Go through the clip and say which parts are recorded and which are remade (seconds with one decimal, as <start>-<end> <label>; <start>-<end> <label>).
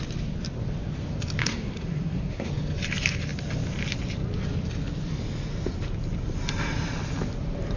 0.0-1.4 recorded; 1.4-2.5 remade; 2.5-7.8 recorded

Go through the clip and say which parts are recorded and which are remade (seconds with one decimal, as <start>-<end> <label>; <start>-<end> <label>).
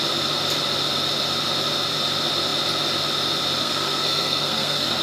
0.0-3.6 recorded; 3.6-5.0 remade